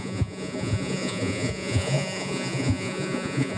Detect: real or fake fake